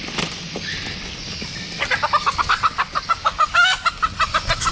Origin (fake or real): real